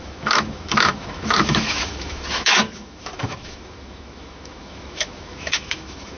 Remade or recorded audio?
remade